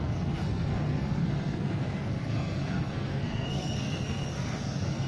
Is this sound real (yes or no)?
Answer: no